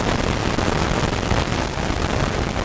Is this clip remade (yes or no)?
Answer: no